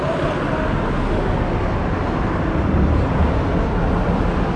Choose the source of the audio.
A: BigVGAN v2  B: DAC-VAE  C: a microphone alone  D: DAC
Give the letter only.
C